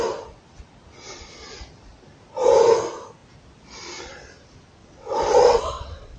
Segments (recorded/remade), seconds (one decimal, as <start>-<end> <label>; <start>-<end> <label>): 0.0-4.8 recorded; 4.8-6.2 remade